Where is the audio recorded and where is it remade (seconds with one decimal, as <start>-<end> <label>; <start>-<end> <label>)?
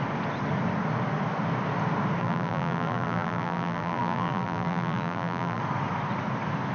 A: 0.0-2.2 recorded; 2.2-5.6 remade; 5.6-6.7 recorded